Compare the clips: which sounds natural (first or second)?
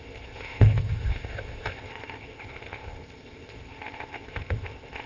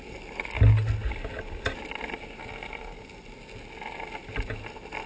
second